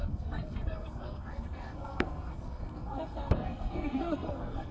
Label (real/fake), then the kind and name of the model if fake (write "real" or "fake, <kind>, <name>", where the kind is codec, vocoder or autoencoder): fake, codec, SNAC